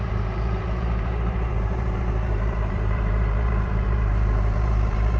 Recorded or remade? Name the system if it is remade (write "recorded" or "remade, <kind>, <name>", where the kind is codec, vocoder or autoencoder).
remade, vocoder, BigVGAN v2